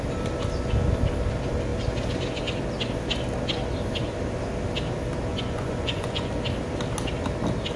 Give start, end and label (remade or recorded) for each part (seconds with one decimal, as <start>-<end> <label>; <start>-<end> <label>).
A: 0.0-5.3 recorded; 5.3-6.3 remade; 6.3-7.8 recorded